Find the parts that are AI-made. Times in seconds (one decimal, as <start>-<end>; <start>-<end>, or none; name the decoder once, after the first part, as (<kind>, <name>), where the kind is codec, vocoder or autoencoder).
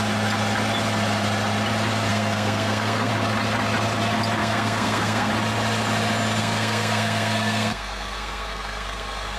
2.1-3.1 (codec, SNAC); 4.4-5.3; 6.4-9.4